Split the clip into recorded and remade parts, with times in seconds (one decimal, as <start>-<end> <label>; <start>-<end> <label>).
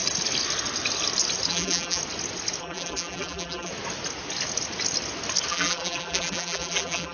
0.0-1.5 recorded; 1.5-2.0 remade; 2.0-2.6 recorded; 2.6-3.7 remade; 3.7-5.5 recorded; 5.5-7.1 remade